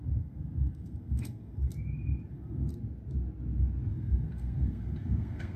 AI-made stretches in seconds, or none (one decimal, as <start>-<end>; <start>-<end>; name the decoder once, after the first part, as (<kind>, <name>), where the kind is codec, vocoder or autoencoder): 0.0-1.7 (codec, SNAC); 2.3-2.7; 3.9-5.6